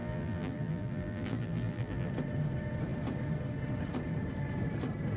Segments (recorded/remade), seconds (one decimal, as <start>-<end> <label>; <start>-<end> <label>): 0.0-2.1 remade; 2.1-5.2 recorded